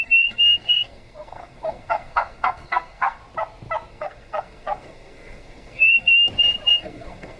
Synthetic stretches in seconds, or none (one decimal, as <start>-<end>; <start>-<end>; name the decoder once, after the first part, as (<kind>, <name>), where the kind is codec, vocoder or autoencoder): 0.0-3.2 (codec, SNAC); 3.9-6.1; 6.7-7.4